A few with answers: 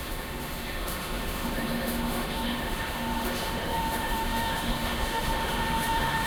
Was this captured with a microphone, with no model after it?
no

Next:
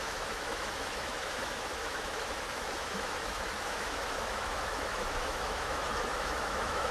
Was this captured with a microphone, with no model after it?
no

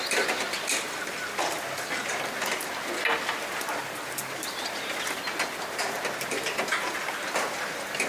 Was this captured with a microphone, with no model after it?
yes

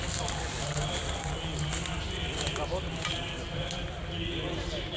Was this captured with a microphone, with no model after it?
yes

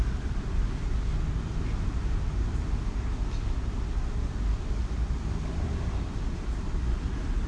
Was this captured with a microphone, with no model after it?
yes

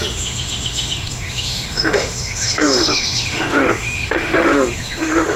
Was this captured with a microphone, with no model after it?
no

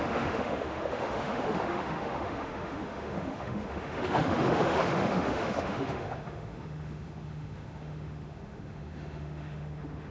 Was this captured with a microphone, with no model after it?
no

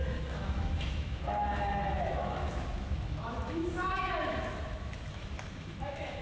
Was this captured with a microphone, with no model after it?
no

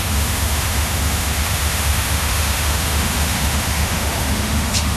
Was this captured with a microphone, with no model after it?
no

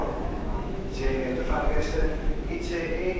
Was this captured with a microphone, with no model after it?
no